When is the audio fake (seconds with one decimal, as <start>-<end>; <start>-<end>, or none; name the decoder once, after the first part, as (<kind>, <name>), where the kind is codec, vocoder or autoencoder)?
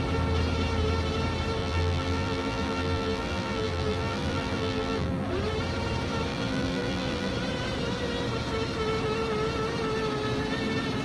1.6-5.3 (vocoder, BigVGAN v2); 6.3-7.3